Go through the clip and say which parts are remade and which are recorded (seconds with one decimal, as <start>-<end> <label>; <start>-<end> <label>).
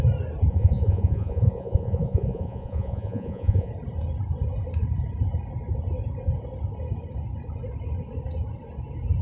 0.0-0.5 recorded; 0.5-3.7 remade; 3.7-9.2 recorded